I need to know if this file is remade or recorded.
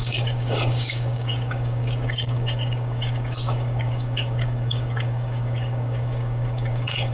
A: remade